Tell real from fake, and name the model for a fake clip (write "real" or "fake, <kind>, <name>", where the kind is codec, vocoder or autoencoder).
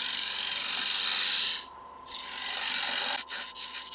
real